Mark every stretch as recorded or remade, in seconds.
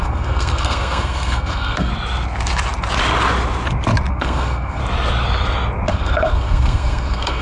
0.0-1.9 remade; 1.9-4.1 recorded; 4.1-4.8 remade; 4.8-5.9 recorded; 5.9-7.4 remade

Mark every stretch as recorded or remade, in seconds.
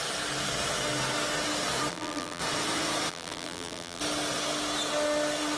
0.0-1.9 recorded; 1.9-2.4 remade; 2.4-3.1 recorded; 3.1-4.0 remade; 4.0-5.6 recorded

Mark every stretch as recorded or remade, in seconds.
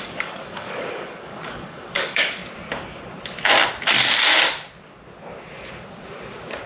0.0-2.4 remade; 2.4-6.7 recorded